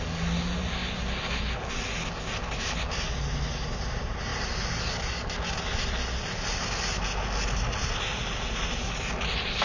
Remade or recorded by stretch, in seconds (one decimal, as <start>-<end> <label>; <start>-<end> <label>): 0.0-9.6 recorded